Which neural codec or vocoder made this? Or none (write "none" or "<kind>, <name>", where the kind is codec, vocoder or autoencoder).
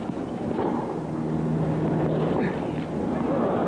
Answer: none